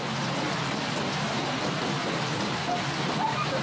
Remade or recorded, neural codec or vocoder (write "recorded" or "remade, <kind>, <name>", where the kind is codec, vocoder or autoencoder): recorded